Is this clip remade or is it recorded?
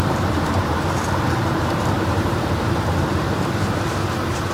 remade